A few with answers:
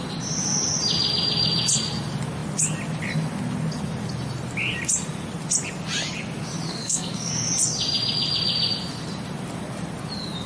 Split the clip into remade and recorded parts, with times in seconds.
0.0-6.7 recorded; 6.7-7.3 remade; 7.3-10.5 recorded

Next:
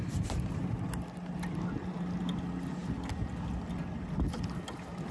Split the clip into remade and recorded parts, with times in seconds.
0.0-5.1 recorded

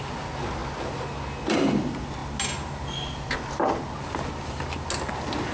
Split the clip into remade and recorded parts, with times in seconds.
0.0-5.5 recorded

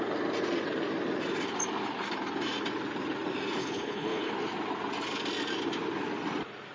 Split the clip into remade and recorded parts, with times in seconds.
0.0-3.6 recorded; 3.6-4.3 remade; 4.3-6.7 recorded